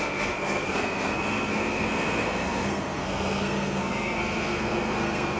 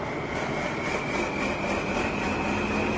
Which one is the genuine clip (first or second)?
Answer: second